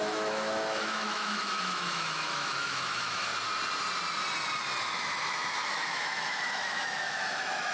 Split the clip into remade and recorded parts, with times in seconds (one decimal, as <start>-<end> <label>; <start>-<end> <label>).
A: 0.0-3.3 remade; 3.3-4.8 recorded; 4.8-7.7 remade